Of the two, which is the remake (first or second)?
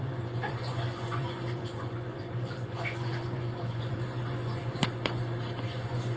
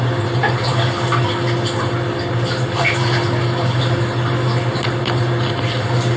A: first